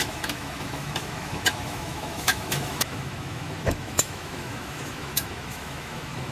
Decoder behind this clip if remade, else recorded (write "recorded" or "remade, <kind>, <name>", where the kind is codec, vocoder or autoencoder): remade, autoencoder, DAC-VAE